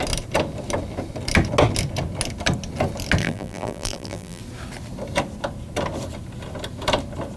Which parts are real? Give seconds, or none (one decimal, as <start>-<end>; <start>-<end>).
0.0-3.2; 4.4-7.4